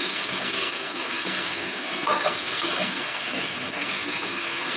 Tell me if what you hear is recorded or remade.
remade